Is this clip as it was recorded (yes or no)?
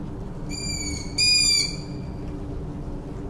yes